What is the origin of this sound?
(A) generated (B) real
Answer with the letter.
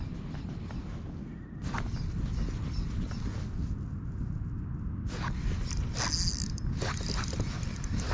B